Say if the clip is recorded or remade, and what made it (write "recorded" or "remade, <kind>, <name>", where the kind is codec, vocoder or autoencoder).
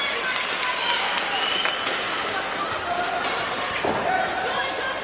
recorded